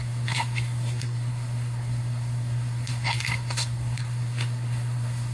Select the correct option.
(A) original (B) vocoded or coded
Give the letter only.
B